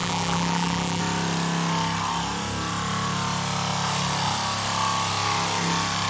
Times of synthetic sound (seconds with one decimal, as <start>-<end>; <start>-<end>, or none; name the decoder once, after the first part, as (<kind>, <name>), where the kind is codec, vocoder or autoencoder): 0.0-1.0 (vocoder, BigVGAN v2)